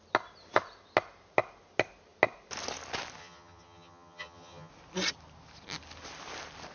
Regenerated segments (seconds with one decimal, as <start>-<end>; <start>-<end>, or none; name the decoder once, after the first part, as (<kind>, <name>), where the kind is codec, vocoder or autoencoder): 3.2-4.7 (vocoder, HiFi-GAN)

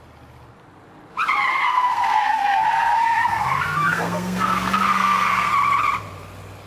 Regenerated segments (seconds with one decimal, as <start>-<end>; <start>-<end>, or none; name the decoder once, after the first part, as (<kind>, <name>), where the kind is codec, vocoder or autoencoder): 1.5-5.5 (codec, SNAC)

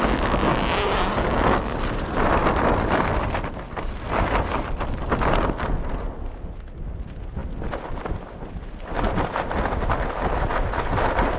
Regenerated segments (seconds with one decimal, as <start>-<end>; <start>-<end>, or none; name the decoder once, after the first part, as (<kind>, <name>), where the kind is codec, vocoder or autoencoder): none

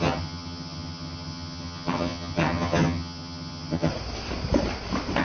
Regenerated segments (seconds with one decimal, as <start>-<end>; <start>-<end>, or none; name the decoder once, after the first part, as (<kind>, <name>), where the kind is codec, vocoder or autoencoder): 0.0-3.9 (vocoder, HiFi-GAN)

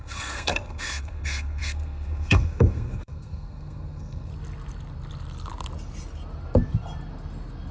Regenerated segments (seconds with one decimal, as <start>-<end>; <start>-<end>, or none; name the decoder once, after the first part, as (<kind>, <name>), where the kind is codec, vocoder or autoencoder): 0.0-4.3 (codec, SNAC)